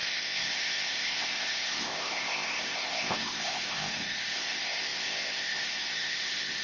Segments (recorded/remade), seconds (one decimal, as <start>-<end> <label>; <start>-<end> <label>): 0.0-6.6 remade